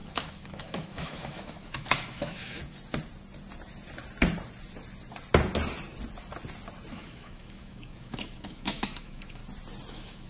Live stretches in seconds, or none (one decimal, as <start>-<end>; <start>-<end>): 2.6-6.9; 9.4-9.9